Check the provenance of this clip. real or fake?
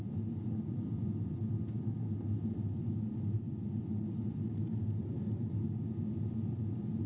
real